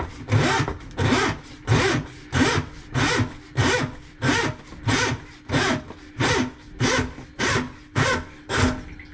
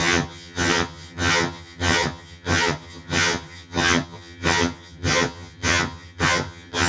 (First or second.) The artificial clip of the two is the second